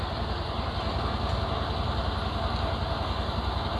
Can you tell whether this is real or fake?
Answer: real